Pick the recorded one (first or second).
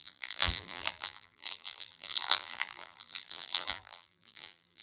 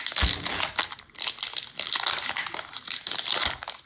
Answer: second